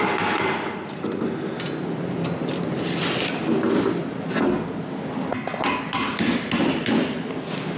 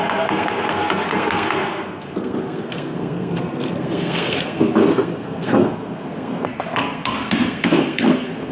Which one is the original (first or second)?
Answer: first